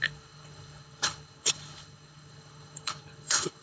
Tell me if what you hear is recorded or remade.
remade